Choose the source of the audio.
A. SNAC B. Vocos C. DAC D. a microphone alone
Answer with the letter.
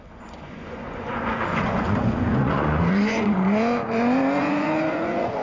B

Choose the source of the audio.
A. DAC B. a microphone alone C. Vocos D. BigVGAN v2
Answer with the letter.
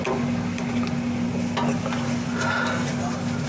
B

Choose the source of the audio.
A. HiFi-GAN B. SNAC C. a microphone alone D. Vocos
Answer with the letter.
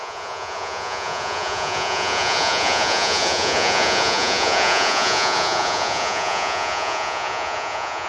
D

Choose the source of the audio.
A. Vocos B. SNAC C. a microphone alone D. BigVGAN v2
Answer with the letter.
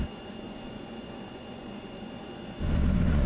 A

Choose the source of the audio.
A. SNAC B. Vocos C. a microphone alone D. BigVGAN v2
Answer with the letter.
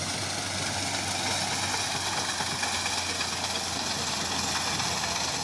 C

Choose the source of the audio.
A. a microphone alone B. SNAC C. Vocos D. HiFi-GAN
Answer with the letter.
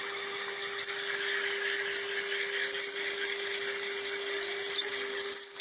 A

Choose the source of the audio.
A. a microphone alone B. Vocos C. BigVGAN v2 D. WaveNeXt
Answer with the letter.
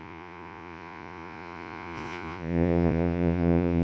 B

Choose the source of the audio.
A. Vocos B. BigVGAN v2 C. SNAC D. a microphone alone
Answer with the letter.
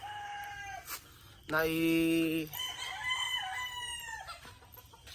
D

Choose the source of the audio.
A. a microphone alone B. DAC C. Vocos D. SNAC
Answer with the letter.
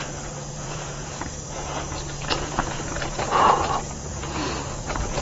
C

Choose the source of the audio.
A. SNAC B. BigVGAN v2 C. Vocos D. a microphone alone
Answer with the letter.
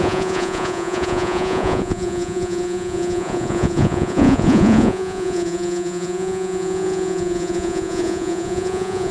C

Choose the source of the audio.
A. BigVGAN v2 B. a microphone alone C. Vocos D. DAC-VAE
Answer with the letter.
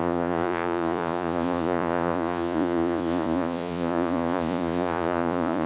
C